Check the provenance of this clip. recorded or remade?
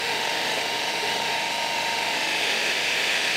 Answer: remade